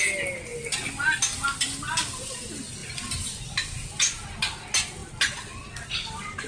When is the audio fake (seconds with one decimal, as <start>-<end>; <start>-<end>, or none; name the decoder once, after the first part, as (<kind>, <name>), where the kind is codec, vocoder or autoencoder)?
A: none